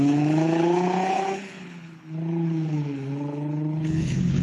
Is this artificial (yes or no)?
yes